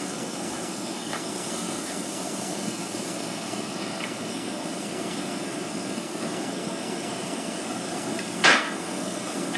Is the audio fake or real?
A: fake